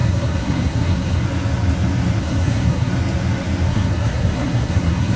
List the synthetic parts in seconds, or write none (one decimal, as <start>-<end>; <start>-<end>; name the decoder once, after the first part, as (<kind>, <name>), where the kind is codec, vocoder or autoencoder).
0.0-1.2 (codec, SNAC); 2.2-2.9; 3.7-5.2